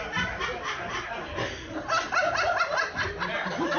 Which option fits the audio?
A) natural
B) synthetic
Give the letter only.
A